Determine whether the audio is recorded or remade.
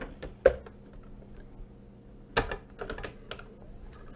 recorded